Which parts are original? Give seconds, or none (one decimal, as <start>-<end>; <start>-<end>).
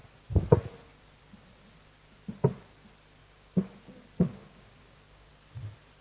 0.0-3.2; 3.7-4.2; 5.3-6.0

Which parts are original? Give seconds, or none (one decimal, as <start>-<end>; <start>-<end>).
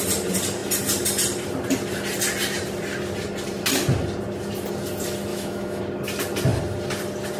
0.0-5.3; 5.8-7.4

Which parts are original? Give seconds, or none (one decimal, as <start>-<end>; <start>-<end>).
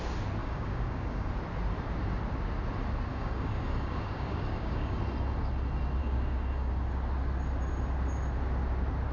0.0-0.4; 1.3-3.1; 5.0-6.0; 6.7-9.1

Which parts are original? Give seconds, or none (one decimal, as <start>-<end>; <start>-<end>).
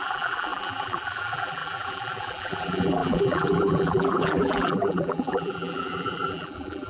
none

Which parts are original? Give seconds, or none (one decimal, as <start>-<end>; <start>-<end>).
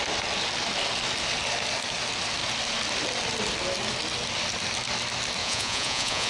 0.0-5.4